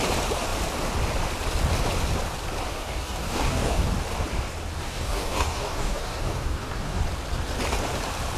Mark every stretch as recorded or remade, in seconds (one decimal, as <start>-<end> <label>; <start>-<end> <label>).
0.0-2.7 recorded; 2.7-3.9 remade; 3.9-4.8 recorded; 4.8-7.0 remade; 7.0-8.4 recorded